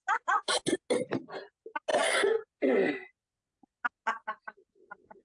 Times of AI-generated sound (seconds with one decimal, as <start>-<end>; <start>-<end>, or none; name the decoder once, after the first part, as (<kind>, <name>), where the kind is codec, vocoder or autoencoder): none